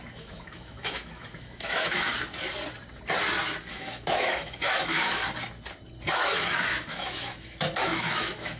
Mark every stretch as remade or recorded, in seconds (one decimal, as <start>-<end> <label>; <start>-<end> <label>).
0.0-2.1 remade; 2.1-3.7 recorded; 3.7-5.2 remade; 5.2-6.1 recorded; 6.1-8.6 remade